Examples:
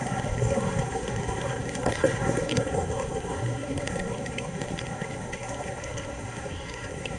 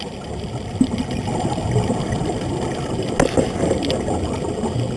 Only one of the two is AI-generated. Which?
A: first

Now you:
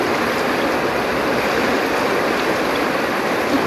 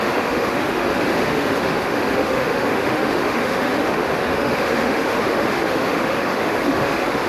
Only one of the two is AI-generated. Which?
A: second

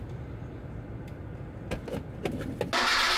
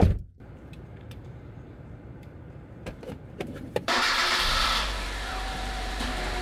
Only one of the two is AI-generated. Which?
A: second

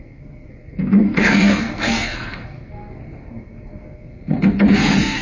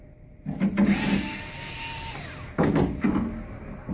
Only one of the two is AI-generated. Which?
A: first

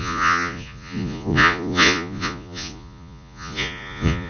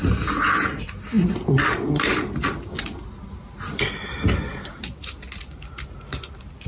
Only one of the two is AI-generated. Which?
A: first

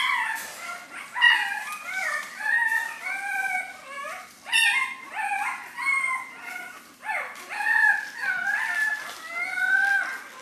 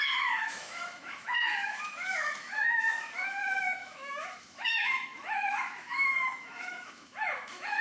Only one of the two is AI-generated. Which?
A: second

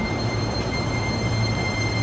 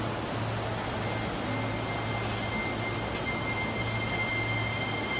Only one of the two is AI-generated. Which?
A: first